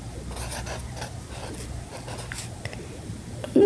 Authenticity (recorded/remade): recorded